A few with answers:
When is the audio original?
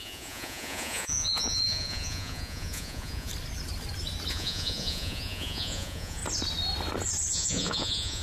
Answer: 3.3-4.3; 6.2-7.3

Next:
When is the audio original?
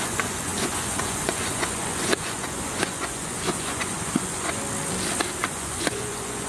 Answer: 4.6-5.4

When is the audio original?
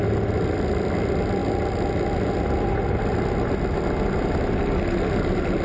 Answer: 0.0-5.6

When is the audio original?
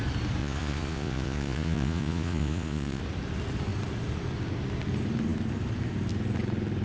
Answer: 0.0-0.4; 3.0-6.8